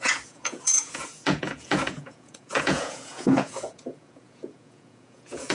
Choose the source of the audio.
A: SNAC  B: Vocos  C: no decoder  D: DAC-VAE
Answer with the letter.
B